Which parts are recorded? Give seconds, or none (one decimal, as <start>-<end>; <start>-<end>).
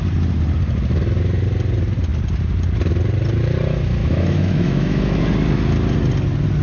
0.0-4.0; 5.2-6.6